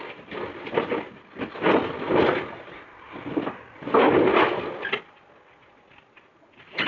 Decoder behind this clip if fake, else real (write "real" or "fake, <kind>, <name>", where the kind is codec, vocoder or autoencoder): real